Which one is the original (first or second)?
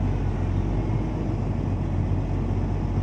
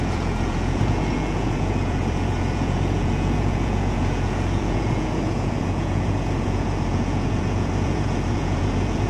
first